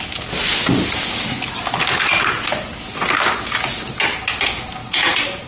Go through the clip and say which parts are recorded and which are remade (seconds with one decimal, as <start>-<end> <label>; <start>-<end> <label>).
0.0-4.8 recorded; 4.8-5.5 remade